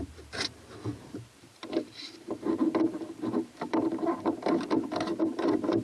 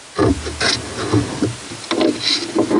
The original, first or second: second